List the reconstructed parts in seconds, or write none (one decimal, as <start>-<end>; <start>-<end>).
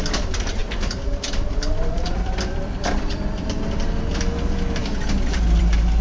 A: 0.6-4.2